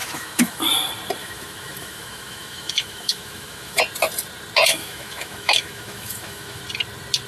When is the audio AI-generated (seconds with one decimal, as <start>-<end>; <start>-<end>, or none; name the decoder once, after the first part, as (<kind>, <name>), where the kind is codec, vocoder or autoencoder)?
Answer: 0.0-0.6 (autoencoder, DAC-VAE); 1.2-3.8; 4.7-6.6